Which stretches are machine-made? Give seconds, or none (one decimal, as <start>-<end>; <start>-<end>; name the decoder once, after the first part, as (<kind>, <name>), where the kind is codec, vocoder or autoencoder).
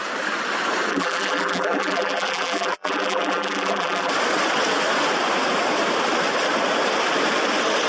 0.9-4.1 (vocoder, BigVGAN v2)